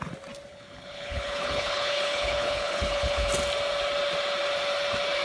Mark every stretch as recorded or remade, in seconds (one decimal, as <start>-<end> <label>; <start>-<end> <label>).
0.0-0.5 recorded; 0.5-3.3 remade; 3.3-5.2 recorded